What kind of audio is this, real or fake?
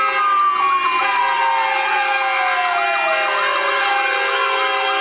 real